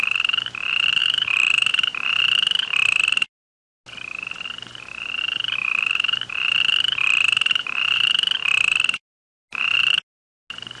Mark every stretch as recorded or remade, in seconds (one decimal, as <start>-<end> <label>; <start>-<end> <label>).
0.0-1.0 recorded; 1.0-1.7 remade; 1.7-5.6 recorded; 5.6-6.3 remade; 6.3-10.8 recorded